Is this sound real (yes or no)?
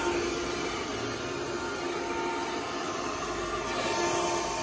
yes